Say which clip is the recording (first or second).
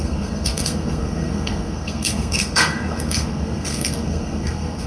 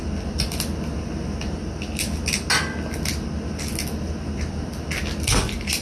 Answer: second